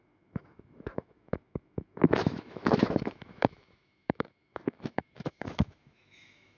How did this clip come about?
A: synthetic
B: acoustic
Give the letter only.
A